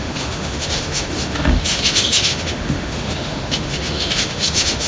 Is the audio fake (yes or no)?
yes